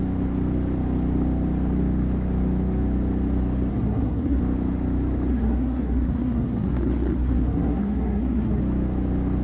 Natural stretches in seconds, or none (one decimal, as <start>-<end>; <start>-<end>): 0.0-3.7; 4.4-5.3; 8.6-9.4